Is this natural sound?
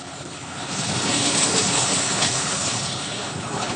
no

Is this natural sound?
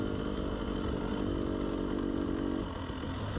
yes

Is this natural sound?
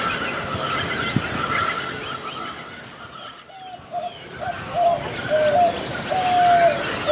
yes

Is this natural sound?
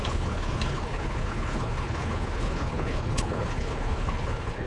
no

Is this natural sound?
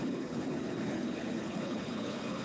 no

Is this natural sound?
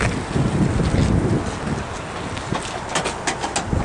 yes